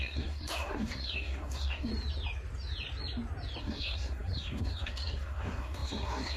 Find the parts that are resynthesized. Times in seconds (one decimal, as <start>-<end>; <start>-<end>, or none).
0.0-1.9; 3.6-6.4